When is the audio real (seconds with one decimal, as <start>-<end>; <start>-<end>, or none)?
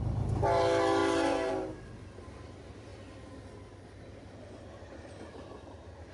0.0-6.1